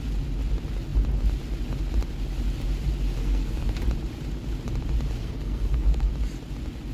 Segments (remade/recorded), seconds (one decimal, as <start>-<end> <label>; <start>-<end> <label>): 0.0-3.2 recorded; 3.2-3.7 remade; 3.7-5.2 recorded; 5.2-6.1 remade; 6.1-6.9 recorded